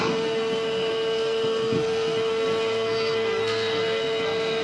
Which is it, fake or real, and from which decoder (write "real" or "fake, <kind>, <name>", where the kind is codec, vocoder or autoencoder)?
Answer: fake, codec, SNAC